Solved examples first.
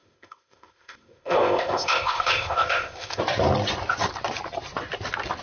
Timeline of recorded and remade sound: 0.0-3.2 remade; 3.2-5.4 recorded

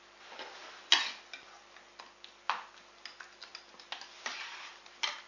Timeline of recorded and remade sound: 0.0-5.3 recorded

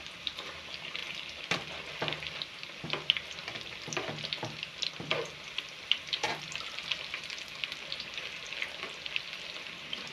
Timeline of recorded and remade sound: 0.0-10.1 recorded

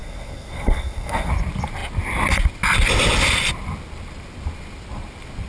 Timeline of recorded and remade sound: 0.0-1.3 remade; 1.3-5.5 recorded

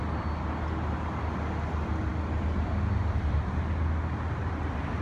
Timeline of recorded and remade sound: 0.0-5.0 recorded

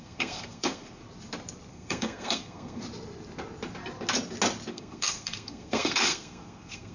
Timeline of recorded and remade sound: 0.0-1.0 remade; 1.0-1.7 recorded; 1.7-2.8 remade; 2.8-4.7 recorded; 4.7-6.9 remade